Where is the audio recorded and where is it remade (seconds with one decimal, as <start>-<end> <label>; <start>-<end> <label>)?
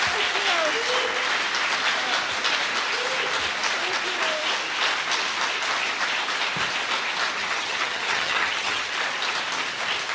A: 0.0-7.4 recorded; 7.4-8.9 remade; 8.9-10.1 recorded